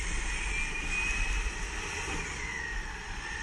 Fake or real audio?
real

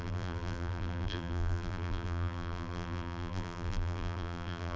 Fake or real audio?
fake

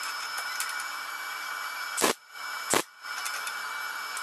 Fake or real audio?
real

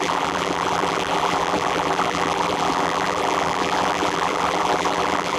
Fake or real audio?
fake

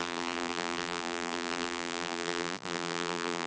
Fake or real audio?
fake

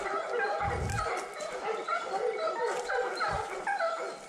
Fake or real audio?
real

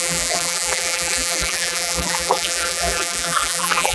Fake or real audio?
fake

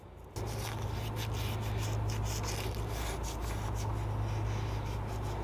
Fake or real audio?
real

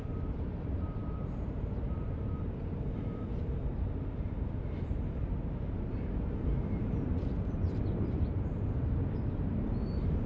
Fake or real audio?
fake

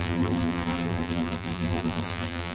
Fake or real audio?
fake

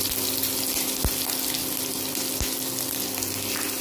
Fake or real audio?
real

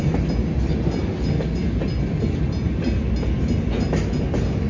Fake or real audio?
real